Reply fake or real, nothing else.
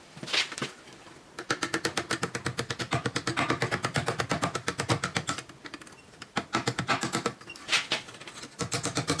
real